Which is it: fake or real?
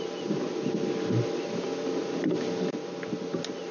real